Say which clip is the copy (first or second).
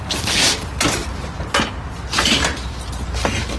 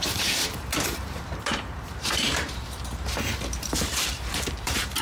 second